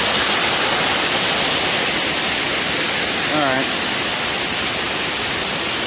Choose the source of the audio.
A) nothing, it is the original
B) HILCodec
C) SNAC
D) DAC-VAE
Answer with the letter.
A